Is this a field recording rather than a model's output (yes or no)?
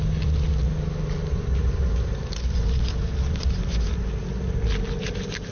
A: yes